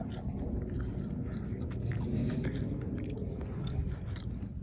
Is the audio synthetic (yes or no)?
no